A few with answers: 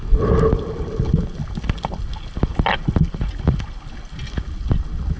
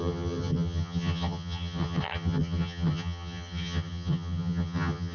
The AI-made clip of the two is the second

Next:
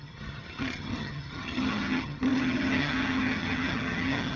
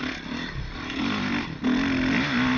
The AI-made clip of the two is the first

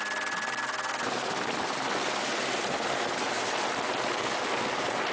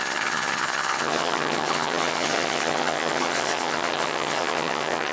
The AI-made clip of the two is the second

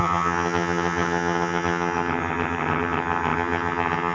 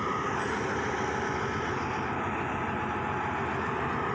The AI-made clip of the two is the first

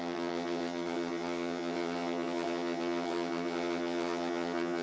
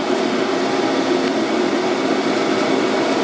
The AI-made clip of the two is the first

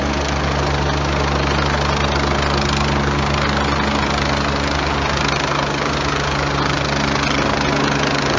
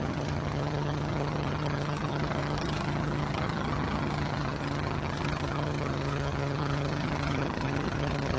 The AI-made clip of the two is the second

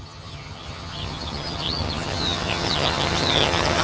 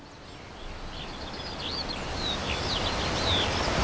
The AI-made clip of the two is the first